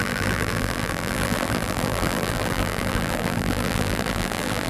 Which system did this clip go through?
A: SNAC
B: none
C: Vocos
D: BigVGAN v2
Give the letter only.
D